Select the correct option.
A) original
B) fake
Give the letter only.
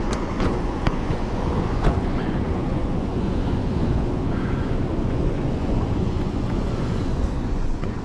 B